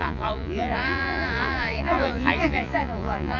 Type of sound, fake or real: fake